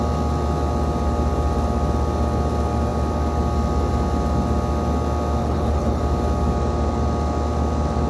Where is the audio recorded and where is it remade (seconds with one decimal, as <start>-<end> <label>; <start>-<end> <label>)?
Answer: 0.0-5.4 recorded; 5.4-6.0 remade; 6.0-8.1 recorded